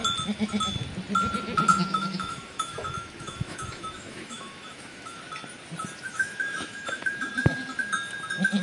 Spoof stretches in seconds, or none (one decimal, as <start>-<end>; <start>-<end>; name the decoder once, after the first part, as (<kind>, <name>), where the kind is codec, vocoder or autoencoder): 1.7-5.2 (autoencoder, DAC-VAE); 6.1-7.3